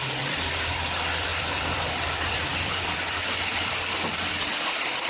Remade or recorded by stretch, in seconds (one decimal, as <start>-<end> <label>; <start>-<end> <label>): 0.0-1.3 recorded; 1.3-4.3 remade; 4.3-5.1 recorded